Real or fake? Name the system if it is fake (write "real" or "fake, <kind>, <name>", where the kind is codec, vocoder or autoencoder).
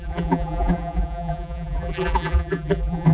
fake, vocoder, BigVGAN v2